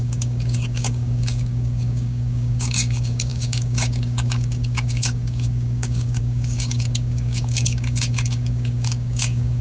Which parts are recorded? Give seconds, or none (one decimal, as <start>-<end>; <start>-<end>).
none